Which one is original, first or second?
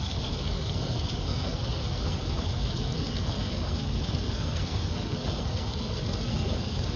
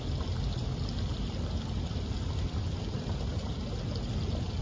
second